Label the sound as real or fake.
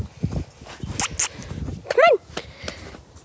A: real